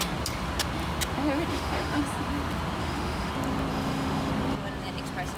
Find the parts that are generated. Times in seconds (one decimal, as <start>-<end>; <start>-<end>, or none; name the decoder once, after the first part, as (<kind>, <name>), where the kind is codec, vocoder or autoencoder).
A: 1.5-2.0 (autoencoder, DAC-VAE); 2.8-3.3; 3.7-4.3